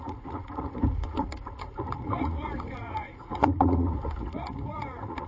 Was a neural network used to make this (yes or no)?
yes